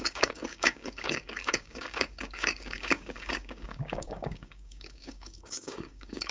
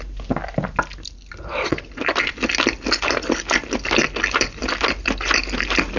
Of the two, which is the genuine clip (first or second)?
second